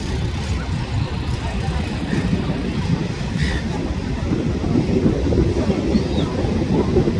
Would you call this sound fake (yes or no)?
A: no